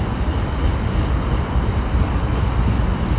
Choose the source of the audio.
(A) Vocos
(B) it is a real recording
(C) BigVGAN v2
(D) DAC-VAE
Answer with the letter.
B